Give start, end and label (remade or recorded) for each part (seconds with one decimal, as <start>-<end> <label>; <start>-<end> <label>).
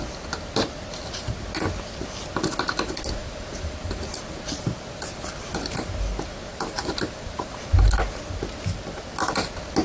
0.0-3.2 recorded; 3.2-4.0 remade; 4.0-6.5 recorded; 6.5-7.7 remade; 7.7-9.8 recorded